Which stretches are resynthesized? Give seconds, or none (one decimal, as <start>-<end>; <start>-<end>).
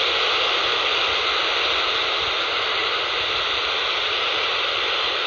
none